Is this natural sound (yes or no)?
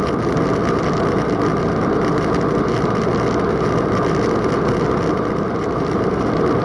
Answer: yes